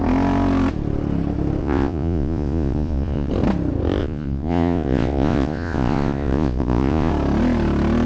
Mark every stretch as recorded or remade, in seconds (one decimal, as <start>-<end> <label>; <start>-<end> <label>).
0.0-1.6 recorded; 1.6-3.3 remade; 3.3-4.0 recorded; 4.0-7.1 remade; 7.1-8.1 recorded